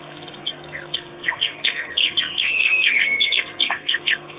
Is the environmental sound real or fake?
fake